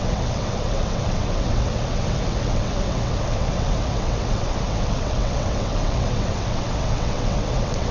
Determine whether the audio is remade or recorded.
remade